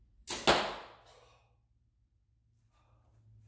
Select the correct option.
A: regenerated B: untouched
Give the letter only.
B